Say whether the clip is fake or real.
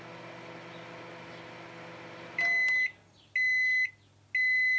real